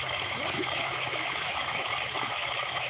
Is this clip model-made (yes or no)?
yes